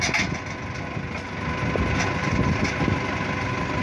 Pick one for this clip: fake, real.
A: real